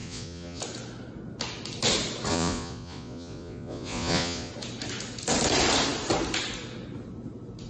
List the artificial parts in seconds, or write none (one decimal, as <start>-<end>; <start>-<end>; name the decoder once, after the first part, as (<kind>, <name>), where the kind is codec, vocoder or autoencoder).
0.0-0.6 (vocoder, Vocos); 2.3-4.5

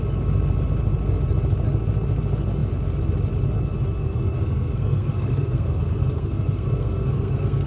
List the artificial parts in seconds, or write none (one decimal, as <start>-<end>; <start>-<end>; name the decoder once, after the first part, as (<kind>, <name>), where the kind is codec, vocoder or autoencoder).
4.0-7.7 (codec, SNAC)

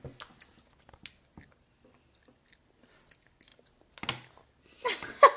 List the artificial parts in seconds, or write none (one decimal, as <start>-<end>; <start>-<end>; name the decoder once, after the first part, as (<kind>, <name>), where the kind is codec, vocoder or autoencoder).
none